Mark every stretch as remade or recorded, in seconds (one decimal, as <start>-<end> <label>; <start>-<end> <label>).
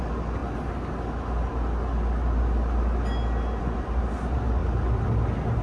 0.0-5.6 recorded